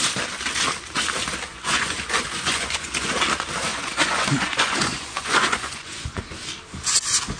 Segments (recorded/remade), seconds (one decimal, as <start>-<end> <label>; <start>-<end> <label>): 0.0-1.5 recorded; 1.5-3.1 remade; 3.1-3.7 recorded; 3.7-6.2 remade; 6.2-7.4 recorded